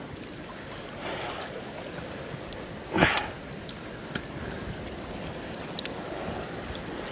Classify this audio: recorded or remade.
recorded